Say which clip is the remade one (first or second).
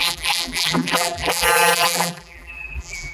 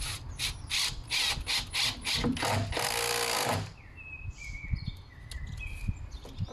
first